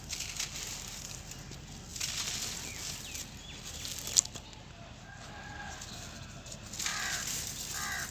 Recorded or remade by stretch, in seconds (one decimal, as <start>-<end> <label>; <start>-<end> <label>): 0.0-6.9 recorded; 6.9-8.1 remade